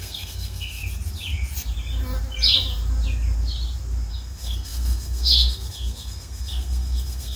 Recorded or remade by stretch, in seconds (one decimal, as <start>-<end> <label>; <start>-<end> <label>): 0.0-0.8 remade; 0.8-4.1 recorded; 4.1-7.4 remade